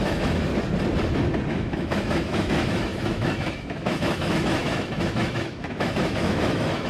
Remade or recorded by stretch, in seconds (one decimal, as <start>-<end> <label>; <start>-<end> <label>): 0.0-0.5 remade; 0.5-1.5 recorded; 1.5-6.9 remade

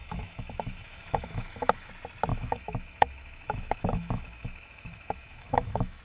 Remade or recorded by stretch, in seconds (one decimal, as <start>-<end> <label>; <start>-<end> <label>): 0.0-1.9 remade; 1.9-2.3 recorded; 2.3-6.0 remade

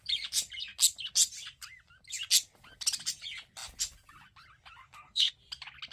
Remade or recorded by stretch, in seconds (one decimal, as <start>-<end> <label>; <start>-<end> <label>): 0.0-4.8 recorded; 4.8-5.3 remade; 5.3-5.9 recorded

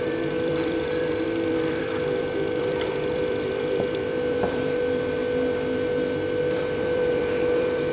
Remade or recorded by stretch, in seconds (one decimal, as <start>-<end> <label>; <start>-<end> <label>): 0.0-5.2 remade; 5.2-6.4 recorded; 6.4-7.9 remade

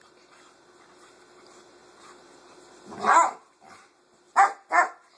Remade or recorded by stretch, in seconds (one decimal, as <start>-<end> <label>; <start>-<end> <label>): 0.0-5.2 recorded

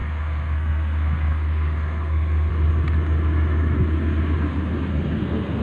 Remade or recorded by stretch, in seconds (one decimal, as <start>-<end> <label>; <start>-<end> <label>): 0.0-2.5 remade; 2.5-4.9 recorded; 4.9-5.6 remade

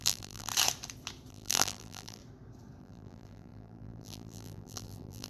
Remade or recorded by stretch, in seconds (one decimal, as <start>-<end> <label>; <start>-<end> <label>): 0.0-0.5 remade; 0.5-1.3 recorded; 1.3-2.2 remade; 2.2-2.8 recorded; 2.8-5.3 remade

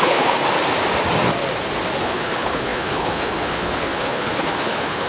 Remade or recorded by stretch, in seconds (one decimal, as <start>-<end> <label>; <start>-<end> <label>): 0.0-0.4 remade; 0.4-2.0 recorded; 2.0-5.1 remade